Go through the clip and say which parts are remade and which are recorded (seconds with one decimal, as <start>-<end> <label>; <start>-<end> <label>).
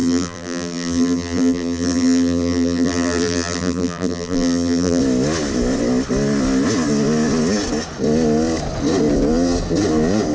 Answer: 0.0-5.0 remade; 5.0-10.3 recorded